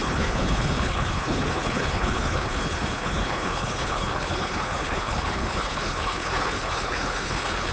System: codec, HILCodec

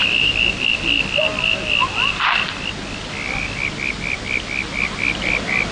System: none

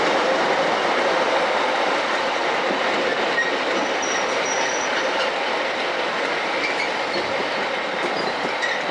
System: none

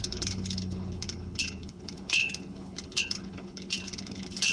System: codec, HILCodec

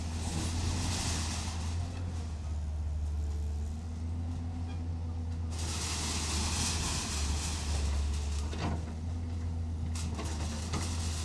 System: none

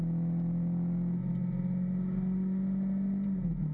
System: none